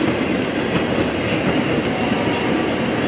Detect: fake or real real